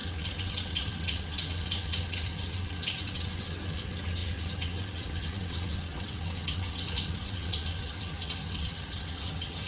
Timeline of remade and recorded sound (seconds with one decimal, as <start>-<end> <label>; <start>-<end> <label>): 0.0-9.7 remade